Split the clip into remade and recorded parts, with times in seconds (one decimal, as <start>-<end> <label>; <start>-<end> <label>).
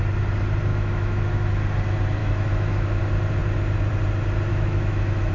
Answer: 0.0-0.7 recorded; 0.7-1.5 remade; 1.5-2.2 recorded; 2.2-3.0 remade; 3.0-4.5 recorded; 4.5-5.3 remade